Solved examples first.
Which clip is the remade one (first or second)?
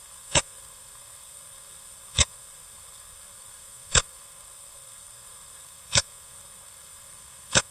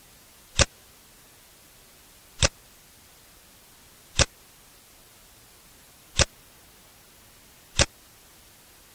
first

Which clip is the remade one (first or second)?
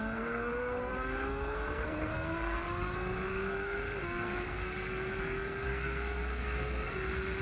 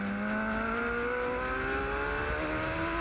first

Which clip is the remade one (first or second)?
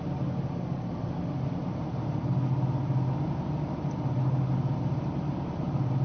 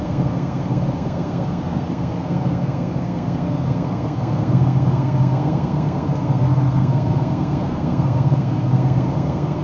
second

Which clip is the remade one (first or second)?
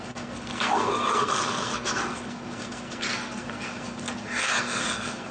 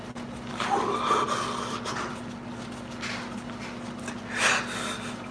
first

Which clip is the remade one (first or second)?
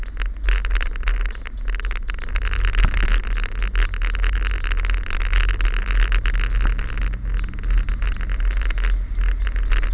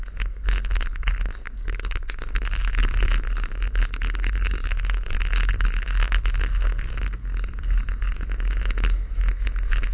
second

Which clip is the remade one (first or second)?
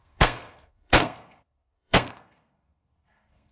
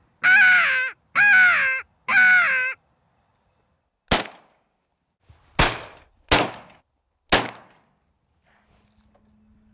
first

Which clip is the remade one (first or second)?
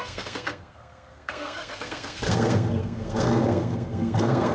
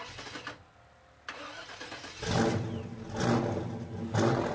first